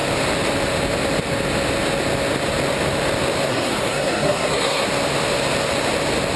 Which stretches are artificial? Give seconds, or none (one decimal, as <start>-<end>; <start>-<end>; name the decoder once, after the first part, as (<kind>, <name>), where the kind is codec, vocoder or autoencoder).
3.5-4.9 (codec, SNAC)